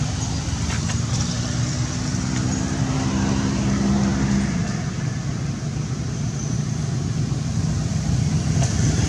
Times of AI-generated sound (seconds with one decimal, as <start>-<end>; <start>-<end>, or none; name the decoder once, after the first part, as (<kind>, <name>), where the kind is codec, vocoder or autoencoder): none